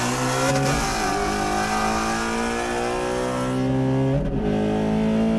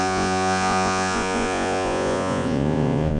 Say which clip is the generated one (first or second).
second